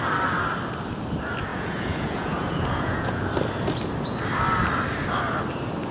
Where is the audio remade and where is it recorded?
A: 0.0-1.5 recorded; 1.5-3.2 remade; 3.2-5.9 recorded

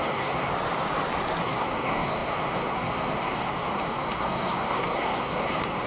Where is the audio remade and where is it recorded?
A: 0.0-0.5 remade; 0.5-1.4 recorded; 1.4-5.9 remade